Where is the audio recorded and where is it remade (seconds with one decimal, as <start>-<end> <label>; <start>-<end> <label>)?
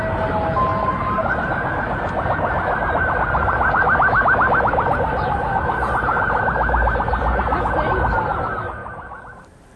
0.0-9.8 recorded